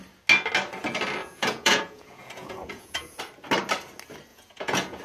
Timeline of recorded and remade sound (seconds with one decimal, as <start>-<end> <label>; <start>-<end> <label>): 0.0-1.2 recorded; 1.2-3.2 remade; 3.2-4.3 recorded; 4.3-5.0 remade